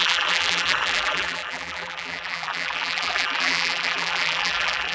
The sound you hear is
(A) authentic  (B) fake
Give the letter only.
B